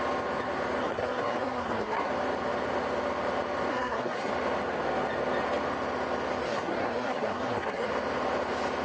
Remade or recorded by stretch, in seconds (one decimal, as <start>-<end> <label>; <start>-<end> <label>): 0.0-0.8 recorded; 0.8-2.1 remade; 2.1-3.7 recorded; 3.7-4.3 remade; 4.3-6.4 recorded; 6.4-7.9 remade; 7.9-8.8 recorded